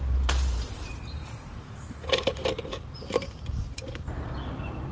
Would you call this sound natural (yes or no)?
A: no